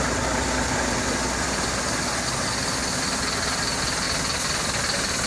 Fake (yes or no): no